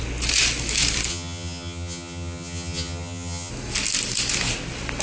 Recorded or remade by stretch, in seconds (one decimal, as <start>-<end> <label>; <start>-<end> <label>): 0.0-1.1 recorded; 1.1-3.5 remade; 3.5-5.0 recorded